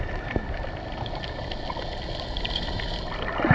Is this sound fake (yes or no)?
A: no